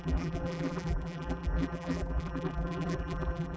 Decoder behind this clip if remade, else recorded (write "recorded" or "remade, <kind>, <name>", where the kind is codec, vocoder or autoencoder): remade, vocoder, BigVGAN v2